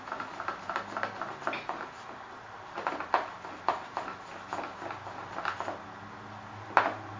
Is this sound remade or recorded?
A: recorded